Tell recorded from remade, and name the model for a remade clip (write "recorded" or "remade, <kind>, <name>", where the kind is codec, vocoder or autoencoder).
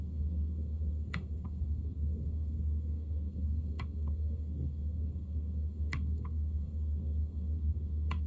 remade, codec, SNAC